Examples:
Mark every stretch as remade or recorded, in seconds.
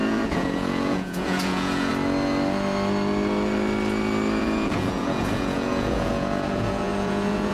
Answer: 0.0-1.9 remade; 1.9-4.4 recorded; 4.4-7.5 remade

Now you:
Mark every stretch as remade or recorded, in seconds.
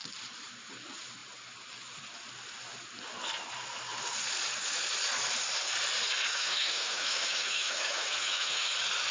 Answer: 0.0-6.3 recorded; 6.3-8.7 remade; 8.7-9.1 recorded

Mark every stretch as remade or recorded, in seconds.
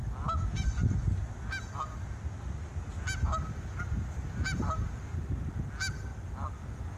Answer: 0.0-1.3 remade; 1.3-3.3 recorded; 3.3-4.9 remade; 4.9-7.0 recorded